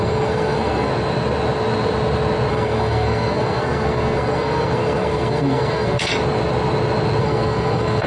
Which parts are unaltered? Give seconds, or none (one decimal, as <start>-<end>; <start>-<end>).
0.9-2.5; 6.1-7.2